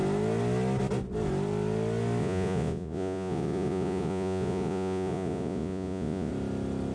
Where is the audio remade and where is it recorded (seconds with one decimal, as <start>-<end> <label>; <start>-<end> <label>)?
0.0-2.2 recorded; 2.2-6.3 remade; 6.3-6.9 recorded